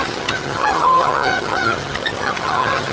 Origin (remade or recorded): remade